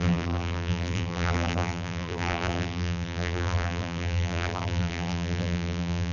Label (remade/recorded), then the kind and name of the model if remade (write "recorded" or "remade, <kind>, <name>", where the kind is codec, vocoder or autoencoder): remade, vocoder, BigVGAN v2